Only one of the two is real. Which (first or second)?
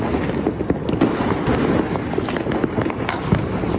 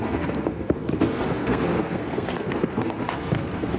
first